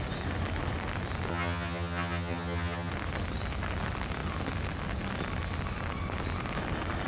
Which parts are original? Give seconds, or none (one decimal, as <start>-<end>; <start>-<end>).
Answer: 0.0-1.3; 2.9-7.1